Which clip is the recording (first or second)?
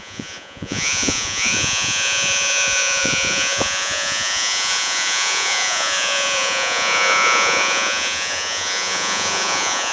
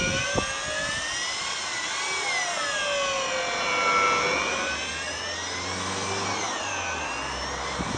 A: second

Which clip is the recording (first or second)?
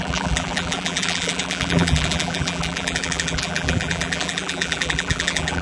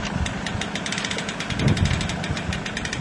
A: second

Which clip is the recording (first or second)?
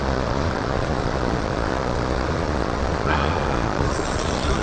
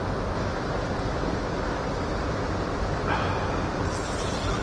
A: second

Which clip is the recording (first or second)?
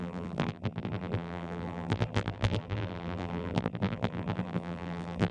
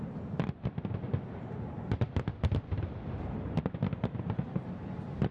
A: second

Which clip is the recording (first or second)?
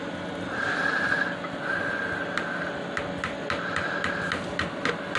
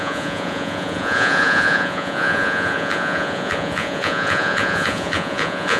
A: first